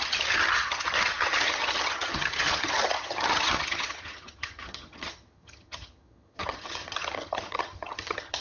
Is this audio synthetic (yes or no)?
yes